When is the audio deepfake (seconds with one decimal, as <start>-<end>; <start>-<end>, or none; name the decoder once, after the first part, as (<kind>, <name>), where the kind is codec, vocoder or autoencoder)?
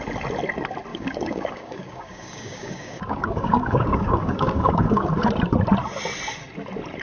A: 0.9-5.1 (codec, DAC)